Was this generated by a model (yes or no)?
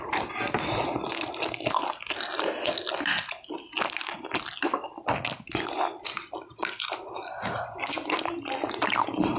no